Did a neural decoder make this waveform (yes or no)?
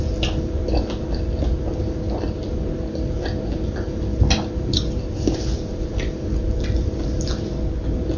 no